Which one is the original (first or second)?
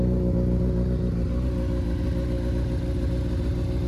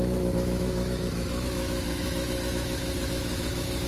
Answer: first